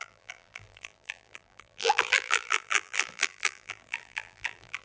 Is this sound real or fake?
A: fake